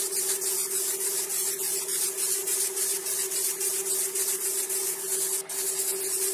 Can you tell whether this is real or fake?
real